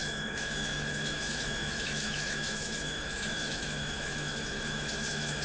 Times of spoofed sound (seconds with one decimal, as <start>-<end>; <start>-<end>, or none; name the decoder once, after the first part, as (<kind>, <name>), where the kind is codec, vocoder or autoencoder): 0.0-5.4 (autoencoder, DAC-VAE)